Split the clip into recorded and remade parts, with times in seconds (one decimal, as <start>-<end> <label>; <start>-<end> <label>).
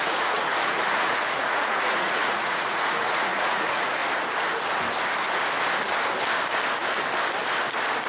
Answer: 0.0-4.0 remade; 4.0-8.1 recorded